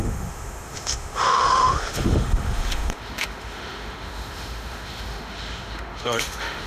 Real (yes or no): no